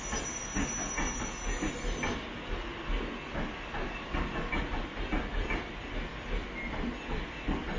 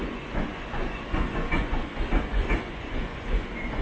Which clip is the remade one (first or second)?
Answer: second